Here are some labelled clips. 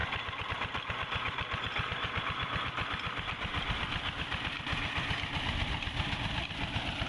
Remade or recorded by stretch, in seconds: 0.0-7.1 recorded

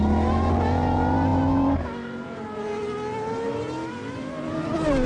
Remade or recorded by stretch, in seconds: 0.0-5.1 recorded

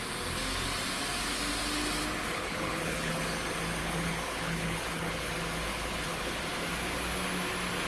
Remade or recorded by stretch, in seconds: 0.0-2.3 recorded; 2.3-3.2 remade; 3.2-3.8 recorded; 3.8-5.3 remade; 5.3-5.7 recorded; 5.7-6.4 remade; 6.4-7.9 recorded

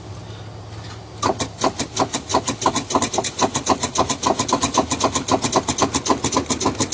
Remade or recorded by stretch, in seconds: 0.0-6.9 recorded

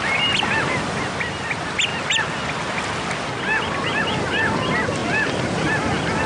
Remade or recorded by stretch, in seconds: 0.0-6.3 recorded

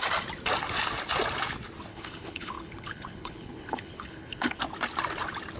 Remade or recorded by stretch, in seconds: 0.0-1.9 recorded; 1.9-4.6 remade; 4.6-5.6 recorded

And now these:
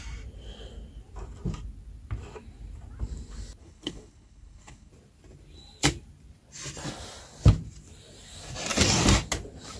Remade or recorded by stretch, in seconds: 0.0-3.6 recorded; 3.6-4.9 remade; 4.9-9.8 recorded